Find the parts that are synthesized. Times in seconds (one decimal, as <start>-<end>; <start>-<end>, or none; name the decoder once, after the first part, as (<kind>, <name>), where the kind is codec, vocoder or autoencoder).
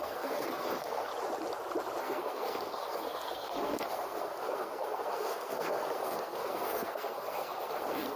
0.0-1.1 (codec, SNAC); 2.0-8.2